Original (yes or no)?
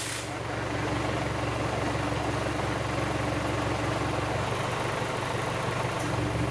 yes